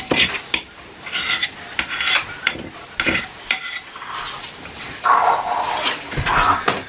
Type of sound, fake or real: real